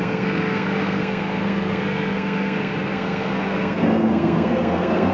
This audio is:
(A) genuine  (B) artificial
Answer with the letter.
B